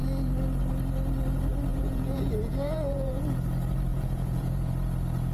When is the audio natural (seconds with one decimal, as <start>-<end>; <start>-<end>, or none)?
0.0-1.7; 3.2-3.9; 4.7-5.3